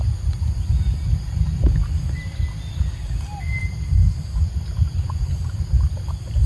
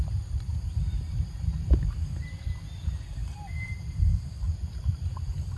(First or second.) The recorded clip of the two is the first